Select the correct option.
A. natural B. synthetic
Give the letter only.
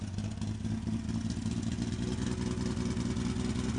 A